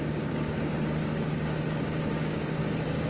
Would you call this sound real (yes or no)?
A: no